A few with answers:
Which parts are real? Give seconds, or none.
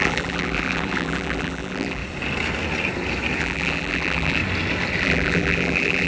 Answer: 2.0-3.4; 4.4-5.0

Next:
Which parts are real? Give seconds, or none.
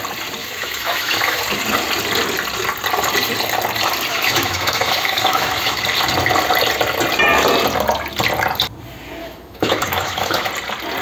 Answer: 0.0-0.4; 1.4-4.1; 5.8-9.2; 10.5-11.0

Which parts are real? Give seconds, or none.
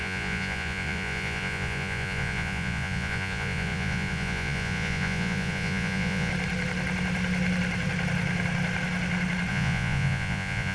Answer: 6.3-9.5